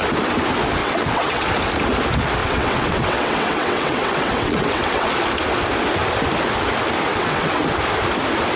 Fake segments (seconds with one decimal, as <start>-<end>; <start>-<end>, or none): 0.8-1.5; 2.4-5.1; 7.1-7.6